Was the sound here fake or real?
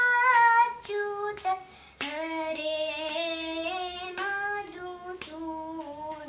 fake